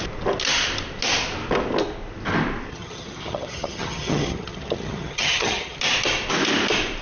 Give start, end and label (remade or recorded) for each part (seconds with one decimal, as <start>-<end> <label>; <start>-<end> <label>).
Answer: 0.0-2.7 recorded; 2.7-5.8 remade; 5.8-7.0 recorded